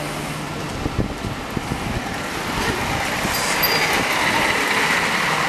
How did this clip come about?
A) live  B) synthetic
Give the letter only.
A